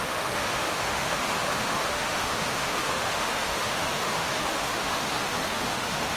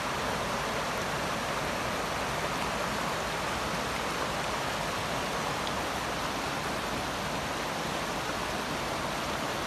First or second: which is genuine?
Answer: second